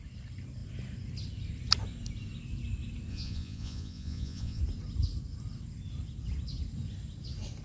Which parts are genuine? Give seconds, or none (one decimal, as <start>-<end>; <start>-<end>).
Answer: 0.0-3.1; 4.6-7.6